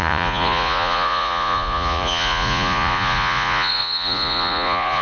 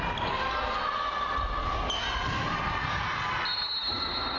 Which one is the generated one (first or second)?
first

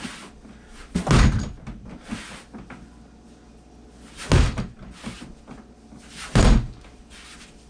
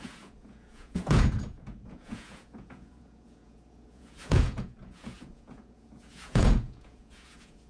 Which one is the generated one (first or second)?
second